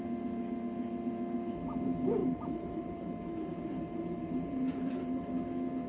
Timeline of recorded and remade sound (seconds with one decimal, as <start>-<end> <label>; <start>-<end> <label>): 0.0-2.2 recorded; 2.2-3.1 remade; 3.1-3.5 recorded; 3.5-4.9 remade; 4.9-5.9 recorded